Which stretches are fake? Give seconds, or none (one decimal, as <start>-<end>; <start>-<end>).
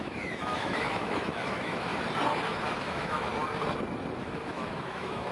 0.0-1.9; 2.8-3.3; 4.2-5.3